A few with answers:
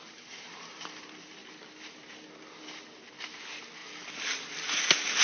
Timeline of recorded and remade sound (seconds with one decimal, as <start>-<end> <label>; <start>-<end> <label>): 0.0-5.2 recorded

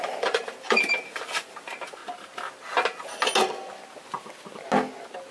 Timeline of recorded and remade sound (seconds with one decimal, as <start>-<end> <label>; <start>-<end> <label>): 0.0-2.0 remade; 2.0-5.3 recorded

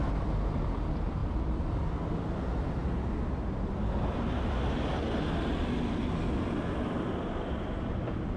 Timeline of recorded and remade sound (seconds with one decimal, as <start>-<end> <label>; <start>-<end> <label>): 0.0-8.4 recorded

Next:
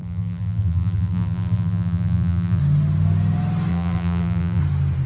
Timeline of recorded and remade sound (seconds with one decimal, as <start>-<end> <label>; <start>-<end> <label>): 0.0-2.6 remade; 2.6-3.7 recorded; 3.7-4.6 remade; 4.6-5.1 recorded

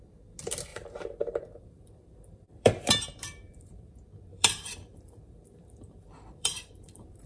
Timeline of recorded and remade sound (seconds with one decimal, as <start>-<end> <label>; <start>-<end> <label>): 0.0-0.7 recorded; 0.7-3.9 remade; 3.9-4.3 recorded; 4.3-7.3 remade

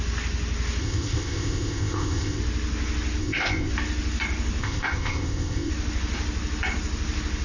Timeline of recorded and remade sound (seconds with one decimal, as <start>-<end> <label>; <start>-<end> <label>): 0.0-0.8 recorded; 0.8-2.4 remade; 2.4-3.2 recorded; 3.2-3.7 remade; 3.7-4.6 recorded; 4.6-5.7 remade; 5.7-7.4 recorded

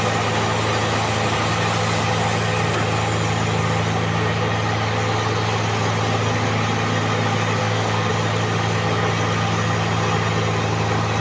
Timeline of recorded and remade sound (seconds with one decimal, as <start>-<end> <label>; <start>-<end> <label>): 0.0-7.6 recorded; 7.6-8.1 remade; 8.1-11.2 recorded